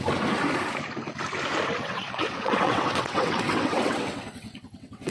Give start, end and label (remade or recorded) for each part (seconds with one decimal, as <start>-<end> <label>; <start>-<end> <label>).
0.0-1.8 recorded; 1.8-5.1 remade